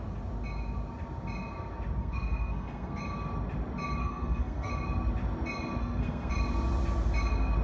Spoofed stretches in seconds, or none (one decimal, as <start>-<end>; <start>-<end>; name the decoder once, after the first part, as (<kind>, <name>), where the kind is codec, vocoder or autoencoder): 2.0-3.0 (codec, SNAC); 4.0-4.7; 5.8-6.3